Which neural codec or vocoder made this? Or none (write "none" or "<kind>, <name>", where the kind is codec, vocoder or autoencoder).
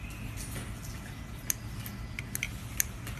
none